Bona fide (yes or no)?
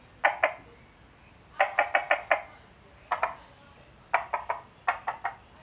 yes